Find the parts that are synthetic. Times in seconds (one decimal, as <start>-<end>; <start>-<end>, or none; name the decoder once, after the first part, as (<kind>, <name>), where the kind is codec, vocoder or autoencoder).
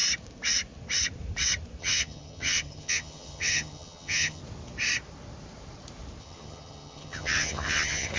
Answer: 1.8-4.4 (vocoder, HiFi-GAN); 6.2-8.2